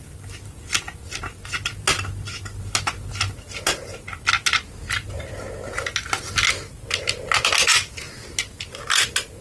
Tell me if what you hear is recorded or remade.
recorded